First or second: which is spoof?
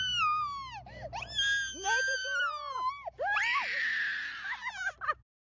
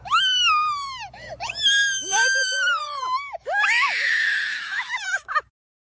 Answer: second